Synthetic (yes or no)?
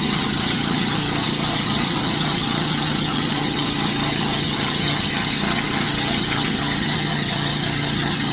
yes